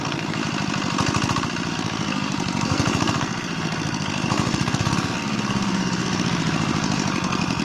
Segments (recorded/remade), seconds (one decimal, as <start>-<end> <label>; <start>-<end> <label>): 0.0-0.4 remade; 0.4-1.7 recorded; 1.7-7.6 remade